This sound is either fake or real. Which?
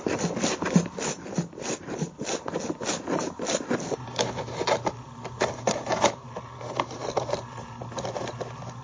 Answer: real